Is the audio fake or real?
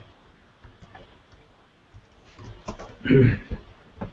real